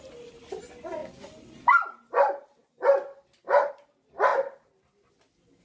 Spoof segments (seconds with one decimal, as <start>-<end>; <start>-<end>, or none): none